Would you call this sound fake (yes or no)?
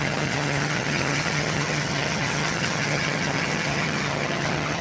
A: yes